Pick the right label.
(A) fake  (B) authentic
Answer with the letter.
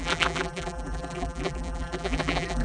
A